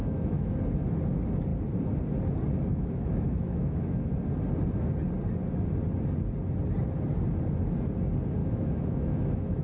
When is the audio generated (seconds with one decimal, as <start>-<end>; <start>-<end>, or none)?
0.0-0.5; 2.7-4.1; 8.4-9.6